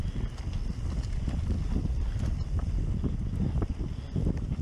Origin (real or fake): real